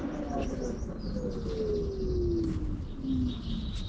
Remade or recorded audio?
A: recorded